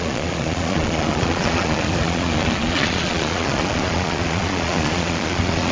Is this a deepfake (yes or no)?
yes